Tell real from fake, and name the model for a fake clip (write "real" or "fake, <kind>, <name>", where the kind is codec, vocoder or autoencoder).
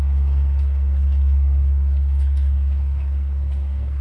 fake, codec, SNAC